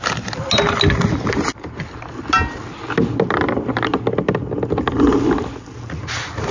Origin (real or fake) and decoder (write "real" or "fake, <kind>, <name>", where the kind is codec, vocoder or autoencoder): real